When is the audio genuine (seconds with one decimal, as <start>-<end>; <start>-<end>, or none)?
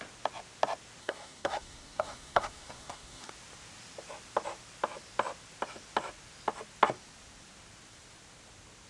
0.0-1.0; 3.3-8.9